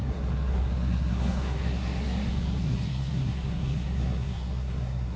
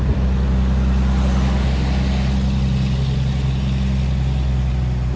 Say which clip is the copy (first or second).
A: first